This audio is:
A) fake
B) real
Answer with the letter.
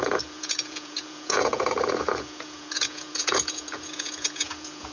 A